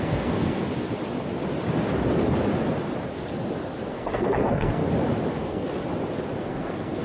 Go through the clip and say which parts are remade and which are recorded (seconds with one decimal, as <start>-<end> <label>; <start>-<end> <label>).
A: 0.0-0.7 remade; 0.7-3.9 recorded; 3.9-4.8 remade; 4.8-5.3 recorded; 5.3-5.7 remade; 5.7-6.4 recorded; 6.4-7.0 remade